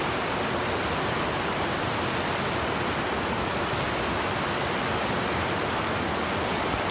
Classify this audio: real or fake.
real